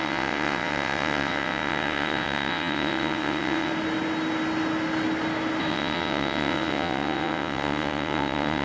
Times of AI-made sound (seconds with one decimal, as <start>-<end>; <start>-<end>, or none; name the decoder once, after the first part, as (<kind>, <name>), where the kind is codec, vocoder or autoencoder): 0.0-3.7 (vocoder, WaveNeXt); 5.7-8.6